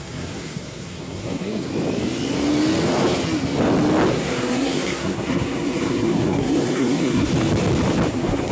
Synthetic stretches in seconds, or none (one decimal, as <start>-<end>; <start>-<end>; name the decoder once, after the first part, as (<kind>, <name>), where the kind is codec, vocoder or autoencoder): 0.0-1.7 (codec, SNAC); 4.1-7.3; 8.1-8.5